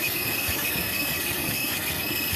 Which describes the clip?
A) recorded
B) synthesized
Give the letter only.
B